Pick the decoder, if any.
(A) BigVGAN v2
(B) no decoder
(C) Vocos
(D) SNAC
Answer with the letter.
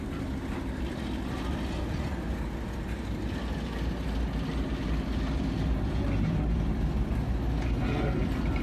B